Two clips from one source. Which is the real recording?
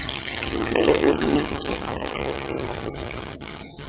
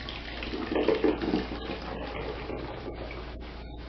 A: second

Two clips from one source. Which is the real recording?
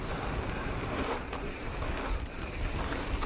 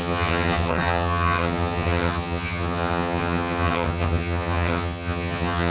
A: first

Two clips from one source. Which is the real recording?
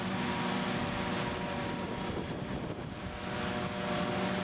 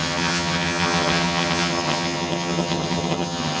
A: first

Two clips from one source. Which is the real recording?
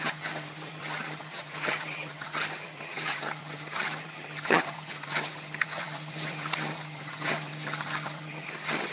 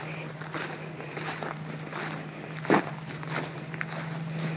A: second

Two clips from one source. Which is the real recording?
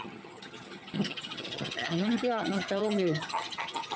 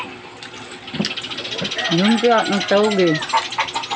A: second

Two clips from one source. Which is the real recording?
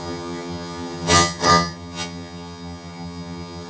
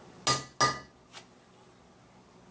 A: second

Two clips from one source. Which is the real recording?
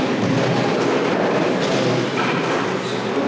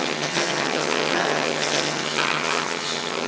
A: first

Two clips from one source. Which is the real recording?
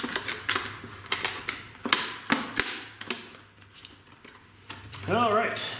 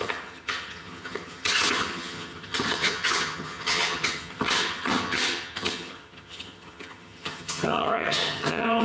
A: first